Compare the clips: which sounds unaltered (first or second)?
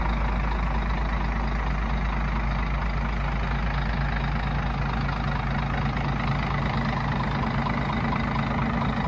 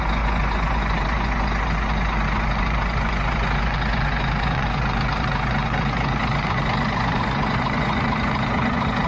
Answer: first